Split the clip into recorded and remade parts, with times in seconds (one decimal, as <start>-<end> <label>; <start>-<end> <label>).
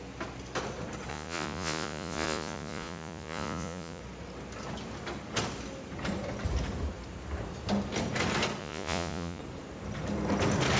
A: 0.0-1.1 recorded; 1.1-4.0 remade; 4.0-8.6 recorded; 8.6-9.4 remade; 9.4-10.8 recorded